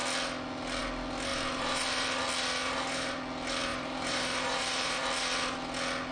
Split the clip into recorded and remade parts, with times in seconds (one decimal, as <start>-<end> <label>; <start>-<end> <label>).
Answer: 0.0-1.3 recorded; 1.3-2.2 remade; 2.2-2.6 recorded; 2.6-3.2 remade; 3.2-3.7 recorded; 3.7-5.0 remade; 5.0-6.1 recorded